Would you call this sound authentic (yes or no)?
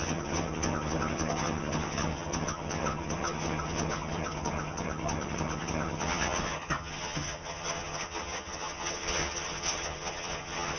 no